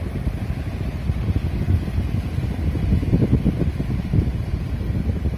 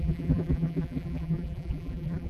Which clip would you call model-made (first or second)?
second